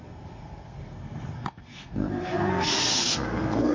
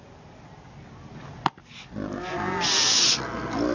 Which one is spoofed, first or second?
first